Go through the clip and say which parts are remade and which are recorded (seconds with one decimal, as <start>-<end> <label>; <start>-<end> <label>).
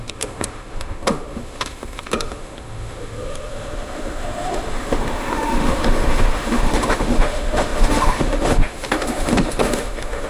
0.0-10.3 remade